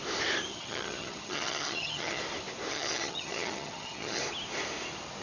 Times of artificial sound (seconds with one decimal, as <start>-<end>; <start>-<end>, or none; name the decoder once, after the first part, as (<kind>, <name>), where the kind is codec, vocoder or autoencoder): 0.5-2.2 (vocoder, HiFi-GAN); 2.7-4.2